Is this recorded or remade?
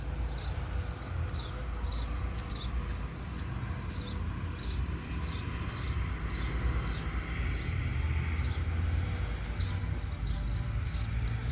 recorded